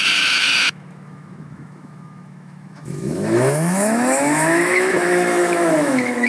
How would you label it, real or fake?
fake